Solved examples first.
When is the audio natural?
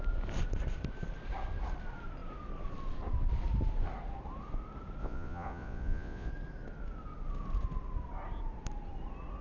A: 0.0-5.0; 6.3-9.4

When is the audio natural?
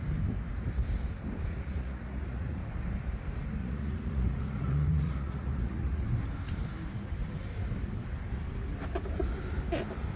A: 0.0-1.5; 2.6-3.6; 6.0-10.2